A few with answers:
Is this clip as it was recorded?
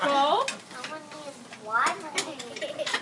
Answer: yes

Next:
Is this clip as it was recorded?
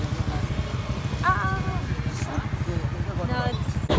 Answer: yes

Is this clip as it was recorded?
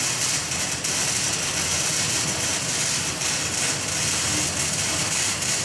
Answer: yes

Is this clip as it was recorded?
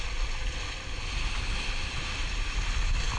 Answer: yes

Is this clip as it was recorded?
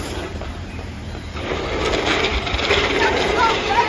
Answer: no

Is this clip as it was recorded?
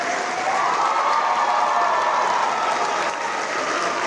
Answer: yes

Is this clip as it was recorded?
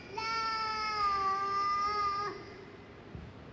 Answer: yes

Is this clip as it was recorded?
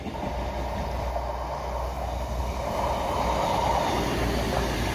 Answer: yes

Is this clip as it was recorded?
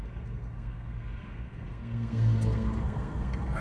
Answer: no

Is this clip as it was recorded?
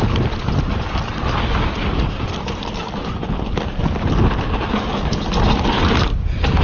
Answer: yes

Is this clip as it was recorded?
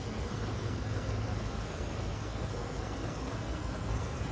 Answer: no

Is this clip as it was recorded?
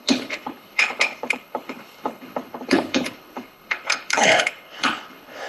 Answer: no